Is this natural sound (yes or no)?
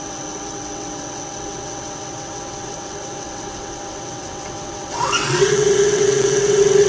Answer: no